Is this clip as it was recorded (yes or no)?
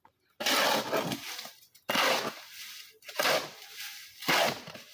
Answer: yes